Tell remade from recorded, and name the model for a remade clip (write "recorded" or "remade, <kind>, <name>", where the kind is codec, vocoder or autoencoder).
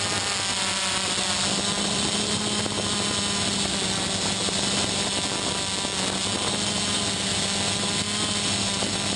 recorded